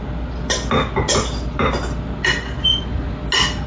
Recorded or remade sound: recorded